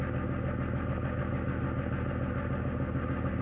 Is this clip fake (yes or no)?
no